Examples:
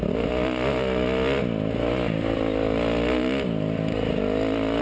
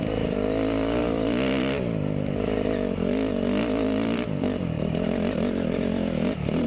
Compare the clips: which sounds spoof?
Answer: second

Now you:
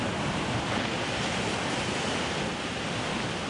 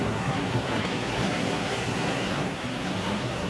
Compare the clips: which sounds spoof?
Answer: second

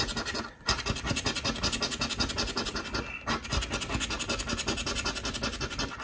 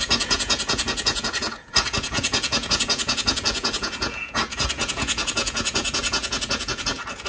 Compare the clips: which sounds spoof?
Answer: second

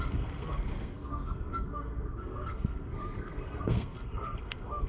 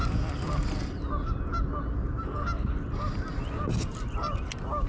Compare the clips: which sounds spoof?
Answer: first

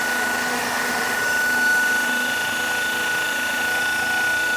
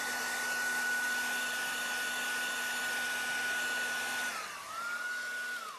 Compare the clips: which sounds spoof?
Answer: first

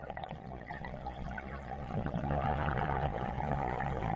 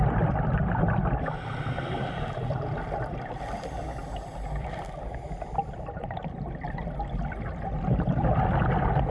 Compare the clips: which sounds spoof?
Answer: first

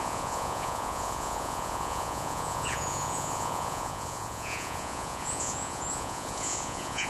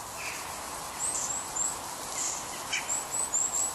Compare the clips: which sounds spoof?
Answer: first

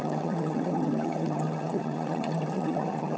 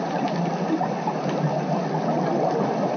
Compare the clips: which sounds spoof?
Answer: first